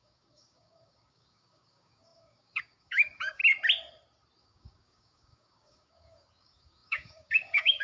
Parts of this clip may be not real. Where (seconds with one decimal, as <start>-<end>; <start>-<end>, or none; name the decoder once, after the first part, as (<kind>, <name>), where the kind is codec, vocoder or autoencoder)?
0.0-3.4 (codec, DAC); 4.4-7.8